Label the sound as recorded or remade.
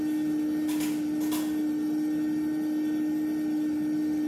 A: recorded